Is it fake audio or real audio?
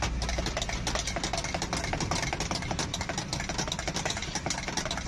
real